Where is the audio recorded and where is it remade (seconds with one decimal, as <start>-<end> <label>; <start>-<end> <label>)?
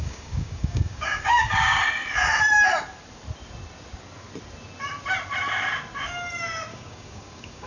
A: 0.0-1.8 remade; 1.8-6.7 recorded; 6.7-7.7 remade